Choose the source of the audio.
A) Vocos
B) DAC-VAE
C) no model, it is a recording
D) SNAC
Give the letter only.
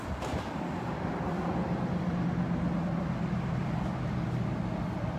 C